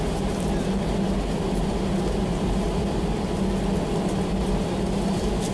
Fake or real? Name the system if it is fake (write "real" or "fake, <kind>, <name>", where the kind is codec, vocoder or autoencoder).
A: real